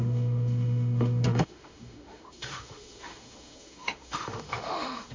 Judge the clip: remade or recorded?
remade